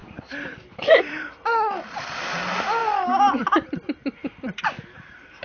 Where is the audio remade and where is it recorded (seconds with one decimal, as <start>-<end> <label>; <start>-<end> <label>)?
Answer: 0.0-1.3 remade; 1.3-5.4 recorded